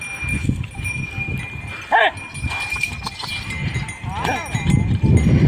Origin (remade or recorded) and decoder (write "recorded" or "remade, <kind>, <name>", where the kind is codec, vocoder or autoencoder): recorded